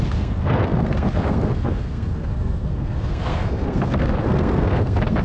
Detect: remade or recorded remade